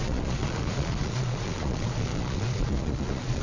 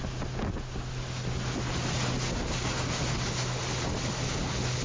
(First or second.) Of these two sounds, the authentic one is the second